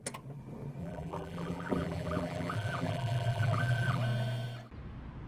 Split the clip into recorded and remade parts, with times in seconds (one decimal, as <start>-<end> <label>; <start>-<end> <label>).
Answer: 0.0-0.8 recorded; 0.8-4.0 remade; 4.0-5.3 recorded